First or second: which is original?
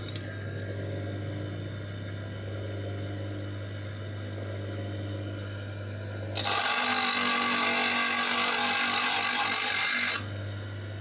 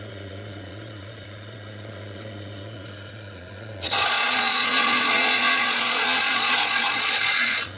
first